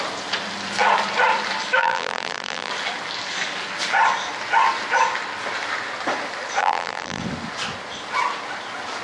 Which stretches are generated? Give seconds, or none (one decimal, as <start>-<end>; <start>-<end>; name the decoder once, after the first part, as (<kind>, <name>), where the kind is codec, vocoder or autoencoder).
1.8-2.7 (vocoder, BigVGAN v2); 6.6-7.2

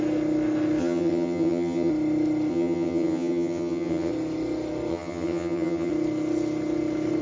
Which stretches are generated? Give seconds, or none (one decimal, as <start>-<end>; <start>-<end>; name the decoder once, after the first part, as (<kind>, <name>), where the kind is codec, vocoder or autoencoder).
0.8-1.9 (vocoder, HiFi-GAN); 2.5-4.1; 4.9-5.9